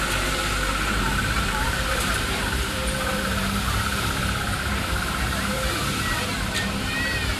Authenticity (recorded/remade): remade